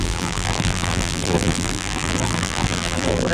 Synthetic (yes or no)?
yes